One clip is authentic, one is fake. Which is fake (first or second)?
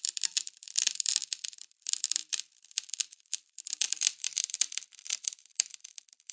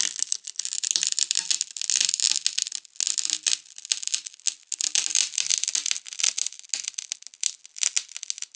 first